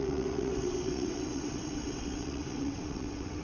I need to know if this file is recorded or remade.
remade